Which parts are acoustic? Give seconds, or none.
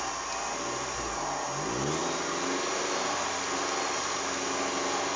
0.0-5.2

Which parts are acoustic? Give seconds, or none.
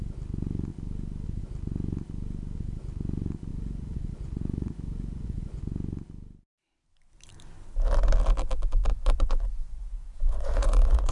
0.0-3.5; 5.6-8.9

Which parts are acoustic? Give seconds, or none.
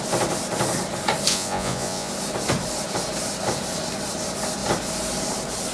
0.0-1.3; 2.1-5.7